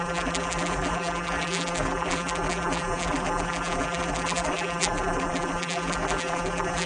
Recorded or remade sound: remade